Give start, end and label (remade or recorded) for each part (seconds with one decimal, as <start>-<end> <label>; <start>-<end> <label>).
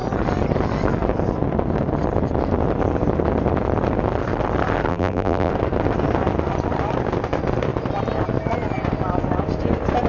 0.0-4.9 recorded; 4.9-5.5 remade; 5.5-10.1 recorded